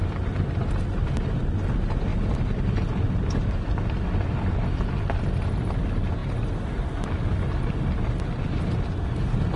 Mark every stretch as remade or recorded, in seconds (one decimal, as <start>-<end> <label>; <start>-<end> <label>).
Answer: 0.0-9.6 recorded